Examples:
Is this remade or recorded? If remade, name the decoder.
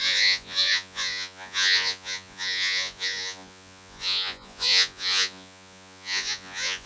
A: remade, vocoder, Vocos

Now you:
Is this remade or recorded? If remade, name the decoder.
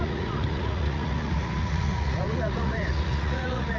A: remade, vocoder, Vocos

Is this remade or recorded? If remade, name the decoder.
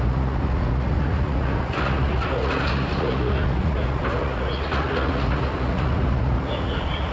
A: remade, vocoder, Vocos